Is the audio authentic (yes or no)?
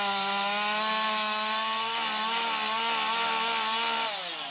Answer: yes